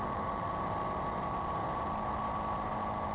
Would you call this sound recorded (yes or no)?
yes